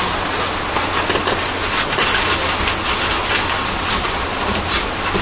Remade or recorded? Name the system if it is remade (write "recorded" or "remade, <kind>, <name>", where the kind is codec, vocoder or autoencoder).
recorded